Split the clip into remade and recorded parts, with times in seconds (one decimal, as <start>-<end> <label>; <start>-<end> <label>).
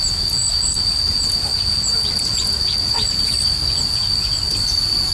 0.0-5.1 recorded